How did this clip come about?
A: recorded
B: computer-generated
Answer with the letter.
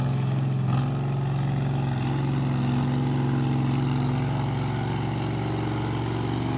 A